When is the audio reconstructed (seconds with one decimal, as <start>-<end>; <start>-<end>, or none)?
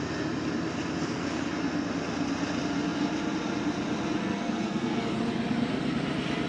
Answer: 1.0-1.5; 4.2-5.0